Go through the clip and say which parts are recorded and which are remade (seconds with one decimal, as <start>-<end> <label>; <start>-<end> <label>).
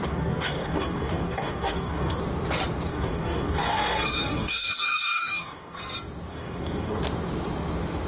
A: 0.0-2.2 remade; 2.2-2.9 recorded; 2.9-5.8 remade; 5.8-6.3 recorded; 6.3-7.0 remade; 7.0-8.1 recorded